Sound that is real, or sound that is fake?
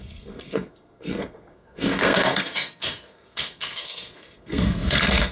fake